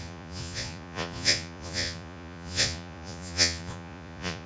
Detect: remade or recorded remade